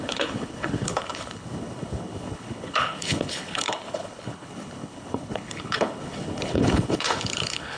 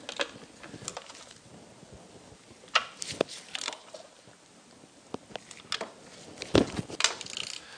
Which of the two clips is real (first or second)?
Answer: second